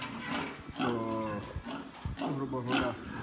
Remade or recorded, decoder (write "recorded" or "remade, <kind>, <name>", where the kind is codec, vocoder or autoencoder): recorded